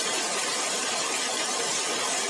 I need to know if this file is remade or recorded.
recorded